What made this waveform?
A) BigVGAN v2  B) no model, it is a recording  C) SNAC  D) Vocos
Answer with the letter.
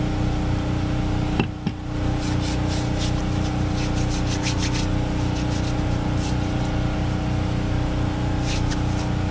B